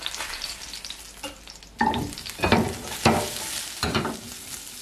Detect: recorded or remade recorded